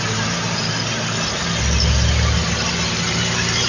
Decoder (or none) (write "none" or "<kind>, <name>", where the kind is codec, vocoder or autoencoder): none